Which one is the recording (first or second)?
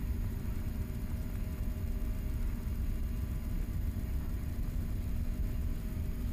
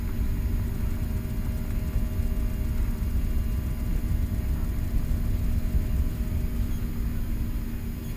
second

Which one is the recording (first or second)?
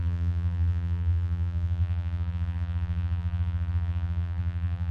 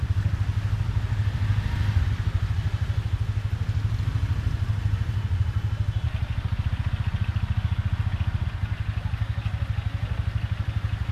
second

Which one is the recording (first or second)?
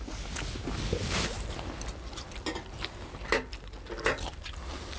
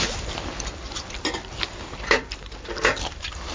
first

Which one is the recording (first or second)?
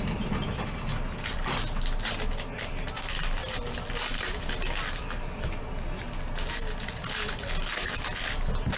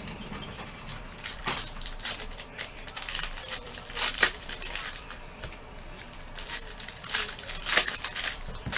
first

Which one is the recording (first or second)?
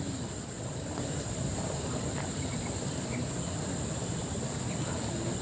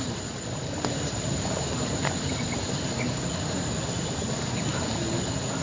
second